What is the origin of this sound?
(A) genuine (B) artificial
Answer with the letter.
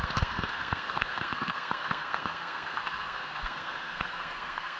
B